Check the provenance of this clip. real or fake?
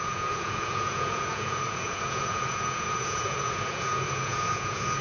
fake